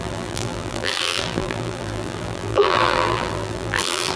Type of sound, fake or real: fake